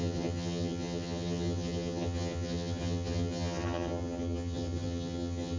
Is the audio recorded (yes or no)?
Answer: no